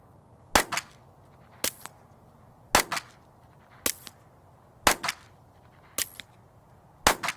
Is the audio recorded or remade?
recorded